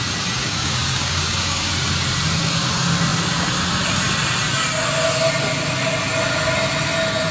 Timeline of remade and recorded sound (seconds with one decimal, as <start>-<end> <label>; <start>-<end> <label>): 0.0-0.4 recorded; 0.4-1.7 remade; 1.7-7.3 recorded